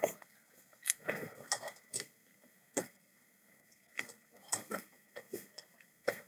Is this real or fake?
fake